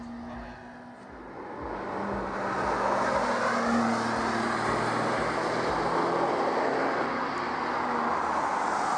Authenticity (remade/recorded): recorded